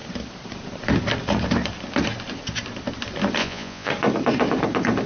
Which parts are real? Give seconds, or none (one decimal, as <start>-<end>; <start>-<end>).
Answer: 0.0-3.4; 3.9-5.1